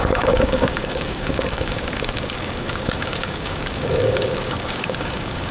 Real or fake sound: fake